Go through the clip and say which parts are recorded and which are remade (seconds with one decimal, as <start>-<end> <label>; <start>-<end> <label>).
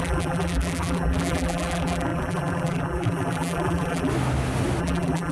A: 0.0-4.1 remade; 4.1-4.8 recorded; 4.8-5.3 remade